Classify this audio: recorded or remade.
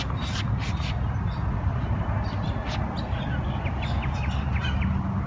recorded